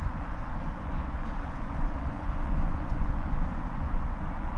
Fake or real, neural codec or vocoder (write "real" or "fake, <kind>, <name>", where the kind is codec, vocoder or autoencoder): fake, vocoder, Vocos